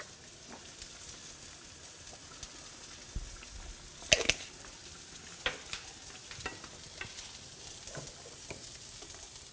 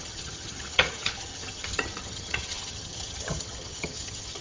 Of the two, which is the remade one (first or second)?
second